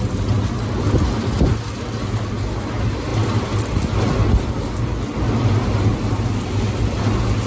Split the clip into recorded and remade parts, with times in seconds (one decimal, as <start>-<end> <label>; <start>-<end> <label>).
0.0-7.5 recorded